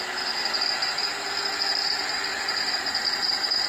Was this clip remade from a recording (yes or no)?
no